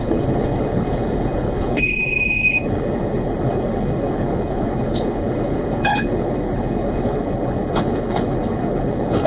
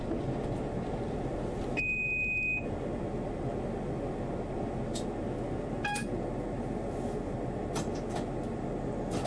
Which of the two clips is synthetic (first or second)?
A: first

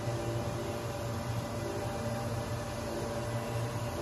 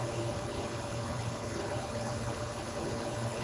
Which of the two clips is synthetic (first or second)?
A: second